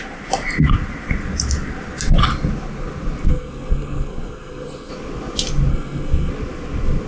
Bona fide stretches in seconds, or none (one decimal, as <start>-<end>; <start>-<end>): 0.0-3.3; 4.9-5.7; 6.3-7.1